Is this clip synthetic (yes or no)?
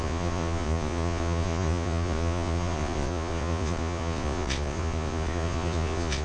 yes